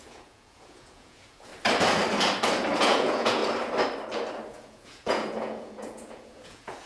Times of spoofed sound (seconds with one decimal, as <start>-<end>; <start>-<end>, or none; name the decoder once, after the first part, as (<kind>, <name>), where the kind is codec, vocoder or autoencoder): 0.0-1.5 (vocoder, Vocos); 2.8-3.4; 4.5-6.9